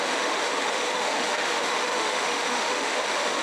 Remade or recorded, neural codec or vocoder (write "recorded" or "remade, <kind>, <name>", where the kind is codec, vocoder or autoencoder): remade, autoencoder, DAC-VAE